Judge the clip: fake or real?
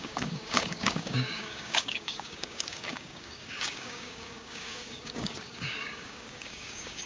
fake